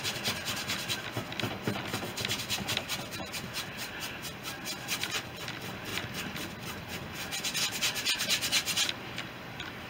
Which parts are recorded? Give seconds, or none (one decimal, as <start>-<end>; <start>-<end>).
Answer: 0.0-9.9